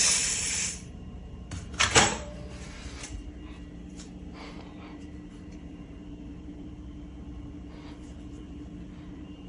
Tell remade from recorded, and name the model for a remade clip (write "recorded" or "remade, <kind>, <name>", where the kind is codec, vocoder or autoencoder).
remade, vocoder, BigVGAN v2